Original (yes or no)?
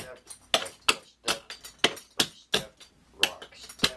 yes